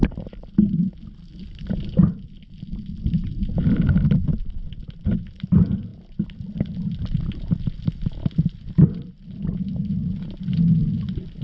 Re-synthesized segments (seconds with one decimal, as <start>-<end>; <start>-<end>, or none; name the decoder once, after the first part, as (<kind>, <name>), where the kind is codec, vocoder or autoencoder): 5.9-7.6 (vocoder, BigVGAN v2)